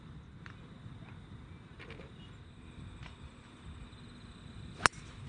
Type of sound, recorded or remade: recorded